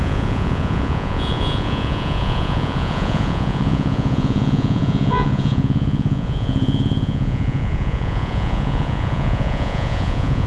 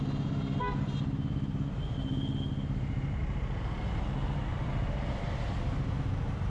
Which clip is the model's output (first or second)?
first